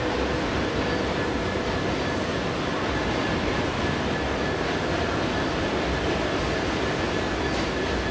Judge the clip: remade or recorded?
recorded